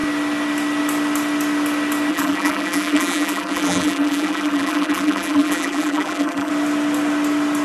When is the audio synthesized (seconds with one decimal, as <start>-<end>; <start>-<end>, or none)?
2.1-6.5